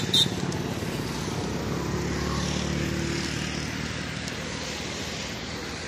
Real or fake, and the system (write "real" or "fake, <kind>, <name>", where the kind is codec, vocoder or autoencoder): real